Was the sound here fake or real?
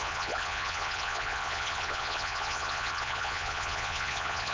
fake